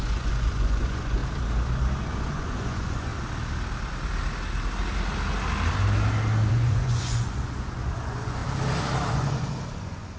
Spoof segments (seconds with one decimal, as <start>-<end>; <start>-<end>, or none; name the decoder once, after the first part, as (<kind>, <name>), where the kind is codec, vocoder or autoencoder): 0.0-1.2 (vocoder, Vocos); 2.0-3.1; 6.5-8.4; 9.1-10.2